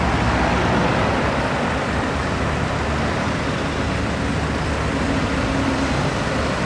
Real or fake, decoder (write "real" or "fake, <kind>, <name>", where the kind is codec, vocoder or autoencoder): real